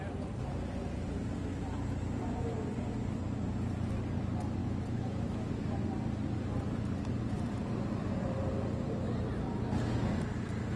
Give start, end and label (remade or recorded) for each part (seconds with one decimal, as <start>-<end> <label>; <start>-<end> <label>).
0.0-4.6 recorded; 4.6-5.5 remade; 5.5-10.8 recorded